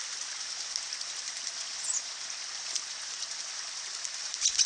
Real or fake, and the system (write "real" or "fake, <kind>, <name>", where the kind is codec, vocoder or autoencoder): real